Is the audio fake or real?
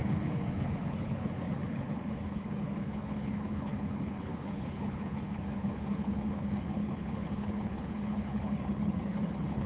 fake